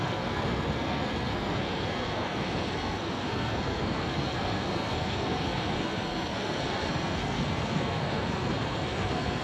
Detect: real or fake fake